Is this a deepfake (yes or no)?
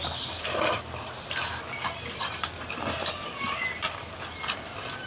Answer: yes